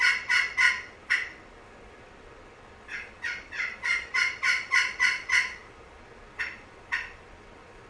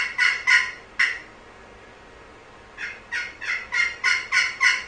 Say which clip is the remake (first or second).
first